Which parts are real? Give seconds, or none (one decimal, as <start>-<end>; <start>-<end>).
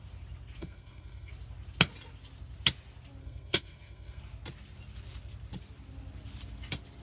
0.0-0.6; 1.3-3.2; 4.2-7.0